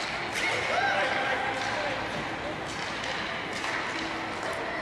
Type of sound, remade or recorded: recorded